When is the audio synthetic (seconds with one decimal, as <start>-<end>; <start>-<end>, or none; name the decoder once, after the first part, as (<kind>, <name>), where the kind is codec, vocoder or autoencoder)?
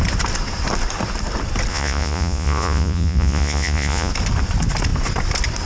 1.7-4.1 (vocoder, Vocos)